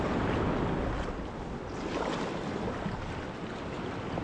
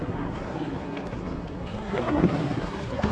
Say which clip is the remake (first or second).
second